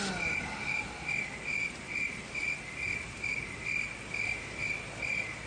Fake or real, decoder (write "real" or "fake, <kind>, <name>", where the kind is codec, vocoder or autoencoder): real